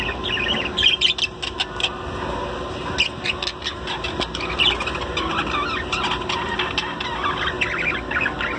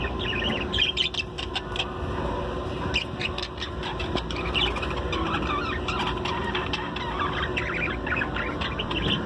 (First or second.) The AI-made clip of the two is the second